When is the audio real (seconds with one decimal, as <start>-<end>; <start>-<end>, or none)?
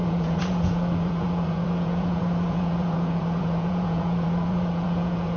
none